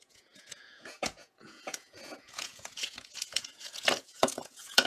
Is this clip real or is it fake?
fake